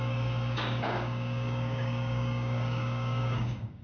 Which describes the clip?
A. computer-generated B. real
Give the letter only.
A